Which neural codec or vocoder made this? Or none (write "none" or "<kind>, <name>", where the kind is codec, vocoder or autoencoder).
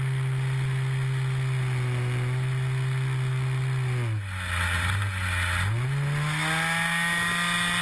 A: none